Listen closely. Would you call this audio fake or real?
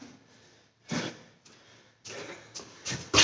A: real